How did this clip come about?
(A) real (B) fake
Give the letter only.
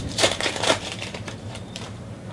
B